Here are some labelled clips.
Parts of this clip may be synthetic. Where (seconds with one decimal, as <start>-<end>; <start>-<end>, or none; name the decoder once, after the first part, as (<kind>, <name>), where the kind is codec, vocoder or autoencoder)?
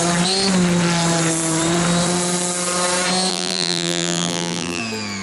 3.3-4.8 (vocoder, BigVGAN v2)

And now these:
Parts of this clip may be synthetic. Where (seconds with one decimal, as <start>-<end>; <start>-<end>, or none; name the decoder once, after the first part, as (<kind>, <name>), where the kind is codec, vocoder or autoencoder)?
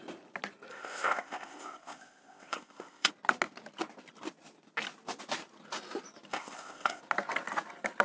0.7-3.1 (codec, ZipCodec); 6.3-7.0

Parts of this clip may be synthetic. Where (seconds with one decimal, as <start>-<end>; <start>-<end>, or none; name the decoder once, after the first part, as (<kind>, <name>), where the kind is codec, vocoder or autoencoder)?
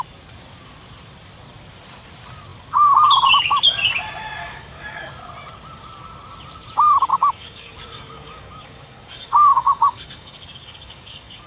4.4-5.1 (codec, DAC); 7.1-11.5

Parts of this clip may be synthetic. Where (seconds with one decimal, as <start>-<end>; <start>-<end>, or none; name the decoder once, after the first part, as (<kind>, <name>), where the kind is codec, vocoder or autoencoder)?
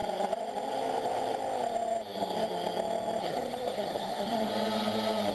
3.2-4.5 (codec, SNAC)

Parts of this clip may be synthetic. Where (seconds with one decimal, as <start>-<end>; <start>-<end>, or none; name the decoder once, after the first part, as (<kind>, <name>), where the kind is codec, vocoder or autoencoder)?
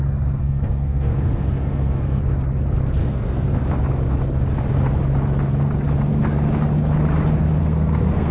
0.4-2.2 (codec, SNAC); 3.0-3.6; 7.6-8.3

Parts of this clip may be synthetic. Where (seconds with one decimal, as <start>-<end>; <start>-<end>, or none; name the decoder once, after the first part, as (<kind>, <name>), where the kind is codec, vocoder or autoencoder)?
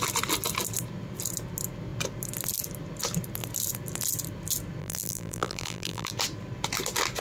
4.8-6.1 (vocoder, BigVGAN v2)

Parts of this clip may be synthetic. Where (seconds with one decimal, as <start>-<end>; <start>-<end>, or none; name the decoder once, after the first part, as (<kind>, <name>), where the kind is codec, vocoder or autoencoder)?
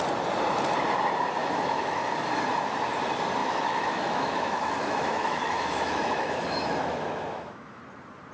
1.4-2.1 (autoencoder, DAC-VAE); 3.4-7.8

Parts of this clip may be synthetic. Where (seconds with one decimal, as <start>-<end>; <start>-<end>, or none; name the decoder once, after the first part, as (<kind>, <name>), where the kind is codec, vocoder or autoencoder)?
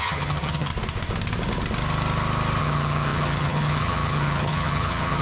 0.0-0.7 (vocoder, HiFi-GAN); 2.6-5.2